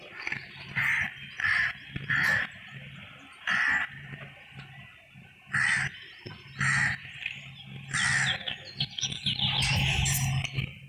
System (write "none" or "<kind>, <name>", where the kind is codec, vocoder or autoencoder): none